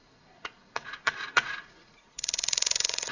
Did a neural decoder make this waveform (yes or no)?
yes